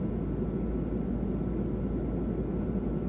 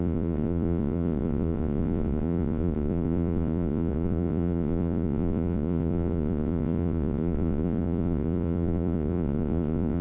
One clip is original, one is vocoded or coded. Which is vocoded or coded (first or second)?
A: second